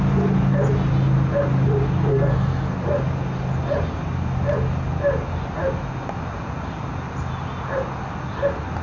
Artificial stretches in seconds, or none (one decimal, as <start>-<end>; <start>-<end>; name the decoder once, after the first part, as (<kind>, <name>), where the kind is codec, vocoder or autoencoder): 2.1-2.8 (codec, SNAC)